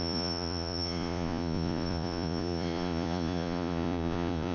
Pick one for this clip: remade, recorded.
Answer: remade